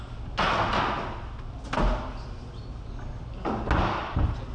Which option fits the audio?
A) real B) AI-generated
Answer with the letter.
A